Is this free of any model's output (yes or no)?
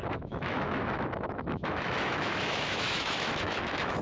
no